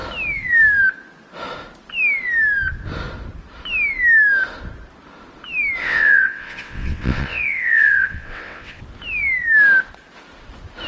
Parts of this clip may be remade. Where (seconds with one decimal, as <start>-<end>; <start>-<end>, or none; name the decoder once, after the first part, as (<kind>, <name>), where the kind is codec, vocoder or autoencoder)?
5.8-8.8 (vocoder, WaveNeXt)